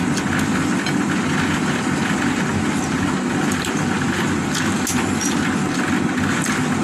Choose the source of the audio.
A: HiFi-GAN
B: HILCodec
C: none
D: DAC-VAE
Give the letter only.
C